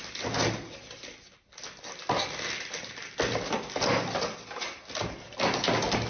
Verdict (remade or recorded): recorded